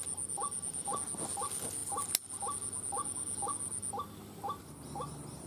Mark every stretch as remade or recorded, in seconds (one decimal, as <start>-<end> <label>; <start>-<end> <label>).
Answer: 0.0-5.5 recorded